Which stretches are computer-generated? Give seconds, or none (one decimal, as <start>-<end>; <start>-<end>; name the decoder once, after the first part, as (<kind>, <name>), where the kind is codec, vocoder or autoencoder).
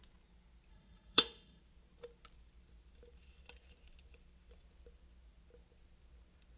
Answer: 0.7-1.6 (vocoder, Vocos)